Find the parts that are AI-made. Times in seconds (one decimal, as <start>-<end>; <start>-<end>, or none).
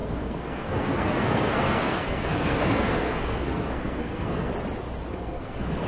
0.0-4.5; 5.1-5.9